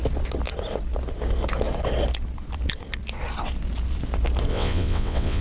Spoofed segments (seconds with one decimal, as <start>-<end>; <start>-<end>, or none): 4.5-5.4